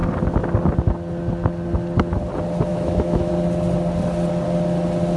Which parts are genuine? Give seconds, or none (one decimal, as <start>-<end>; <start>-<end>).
0.0-2.7; 3.3-5.2